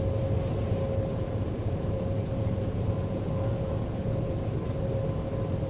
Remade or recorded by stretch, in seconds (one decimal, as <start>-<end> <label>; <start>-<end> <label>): 0.0-1.1 recorded; 1.1-4.5 remade; 4.5-5.7 recorded